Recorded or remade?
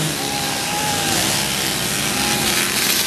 recorded